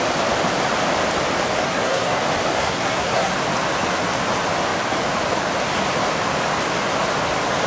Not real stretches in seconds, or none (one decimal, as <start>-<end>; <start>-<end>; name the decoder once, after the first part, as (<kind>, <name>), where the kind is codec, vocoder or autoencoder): 1.6-2.2 (codec, SNAC); 2.6-3.3